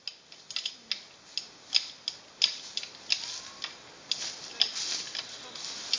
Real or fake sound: real